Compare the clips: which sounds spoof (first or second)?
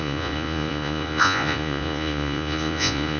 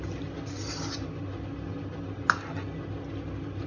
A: first